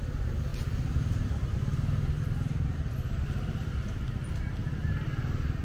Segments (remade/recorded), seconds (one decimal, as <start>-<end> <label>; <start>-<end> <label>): 0.0-5.6 recorded